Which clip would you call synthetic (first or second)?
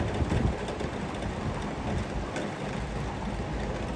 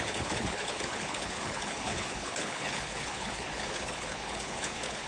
second